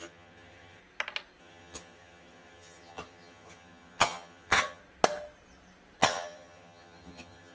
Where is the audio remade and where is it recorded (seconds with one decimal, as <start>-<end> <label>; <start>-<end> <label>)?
0.0-0.8 remade; 0.8-1.4 recorded; 1.4-4.8 remade; 4.8-6.0 recorded; 6.0-7.5 remade